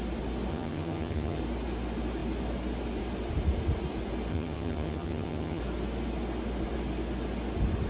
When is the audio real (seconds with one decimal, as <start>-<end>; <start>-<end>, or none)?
0.0-0.5; 1.4-4.3; 5.6-7.9